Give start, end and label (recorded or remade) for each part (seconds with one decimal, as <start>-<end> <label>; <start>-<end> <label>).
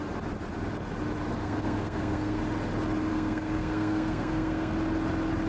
0.0-1.4 recorded; 1.4-2.4 remade; 2.4-3.1 recorded; 3.1-4.7 remade; 4.7-5.5 recorded